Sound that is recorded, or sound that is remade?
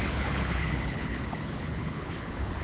remade